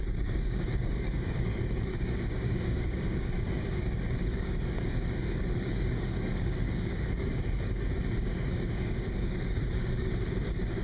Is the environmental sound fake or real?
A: fake